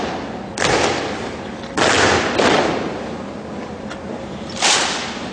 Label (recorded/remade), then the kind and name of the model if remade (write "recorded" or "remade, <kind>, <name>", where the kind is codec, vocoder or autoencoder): recorded